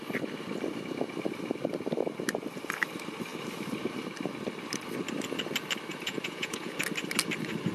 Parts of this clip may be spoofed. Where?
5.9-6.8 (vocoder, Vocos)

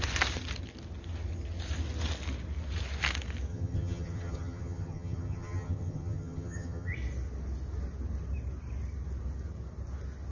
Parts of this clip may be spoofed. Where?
3.5-6.9 (vocoder, HiFi-GAN)

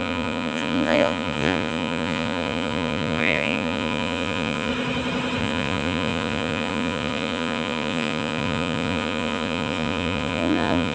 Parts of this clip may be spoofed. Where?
0.0-4.7 (vocoder, Vocos); 5.4-10.9

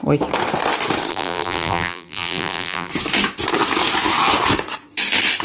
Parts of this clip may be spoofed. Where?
1.1-2.9 (vocoder, BigVGAN v2)